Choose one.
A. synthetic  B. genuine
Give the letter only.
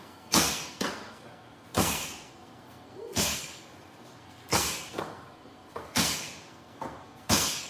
A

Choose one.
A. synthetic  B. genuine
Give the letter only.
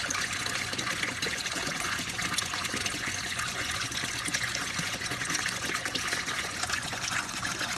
A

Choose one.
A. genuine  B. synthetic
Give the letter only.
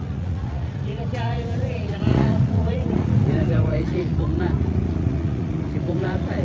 B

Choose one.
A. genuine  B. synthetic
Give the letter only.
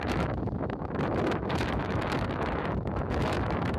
B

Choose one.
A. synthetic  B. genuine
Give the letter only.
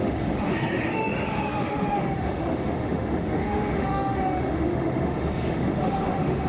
A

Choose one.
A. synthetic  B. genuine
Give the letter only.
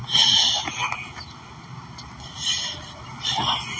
B